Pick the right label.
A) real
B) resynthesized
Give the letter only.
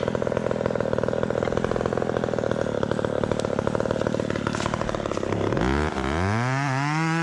A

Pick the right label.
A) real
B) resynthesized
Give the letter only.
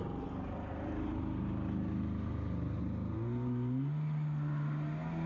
A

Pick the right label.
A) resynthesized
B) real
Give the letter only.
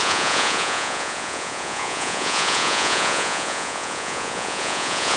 A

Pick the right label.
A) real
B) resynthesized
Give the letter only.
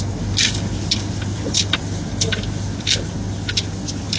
A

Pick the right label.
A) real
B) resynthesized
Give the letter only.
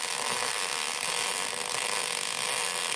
A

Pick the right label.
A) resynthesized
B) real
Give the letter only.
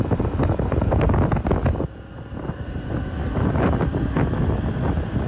B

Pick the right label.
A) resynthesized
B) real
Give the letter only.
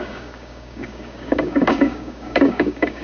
A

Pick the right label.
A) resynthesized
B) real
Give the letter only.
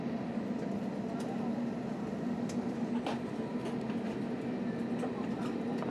B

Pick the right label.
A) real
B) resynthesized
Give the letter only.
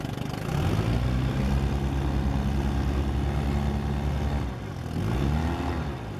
A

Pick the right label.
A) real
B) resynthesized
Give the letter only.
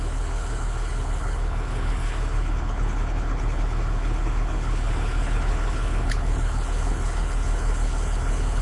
B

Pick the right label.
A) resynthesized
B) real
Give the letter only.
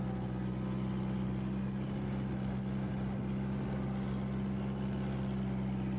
B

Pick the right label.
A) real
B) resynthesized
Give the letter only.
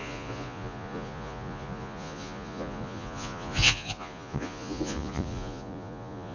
B